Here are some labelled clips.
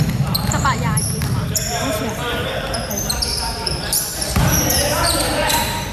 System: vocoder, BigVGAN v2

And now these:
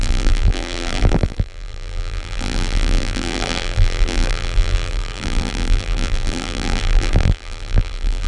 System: vocoder, BigVGAN v2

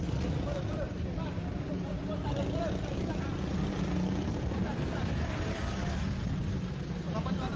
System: none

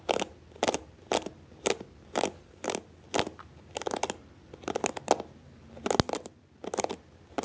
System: none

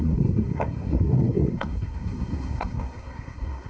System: codec, SNAC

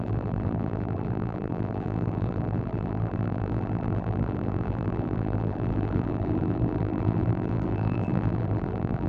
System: vocoder, BigVGAN v2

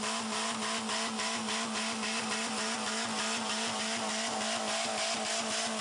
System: none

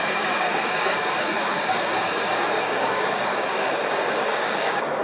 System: codec, DAC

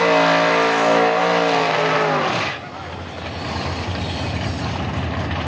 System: none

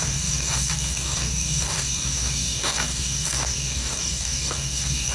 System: codec, DAC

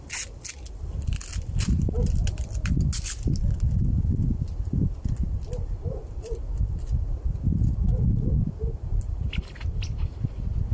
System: none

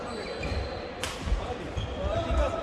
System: none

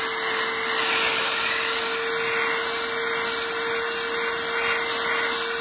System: none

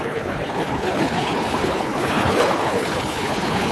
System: codec, HILCodec